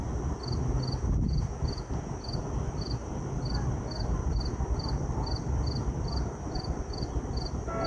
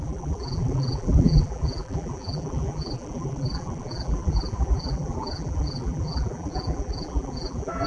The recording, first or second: first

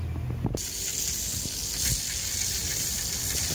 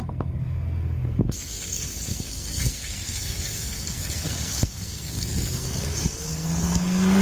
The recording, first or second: first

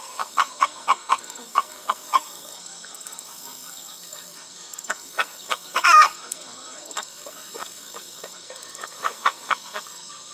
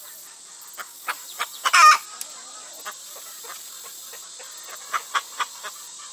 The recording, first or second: second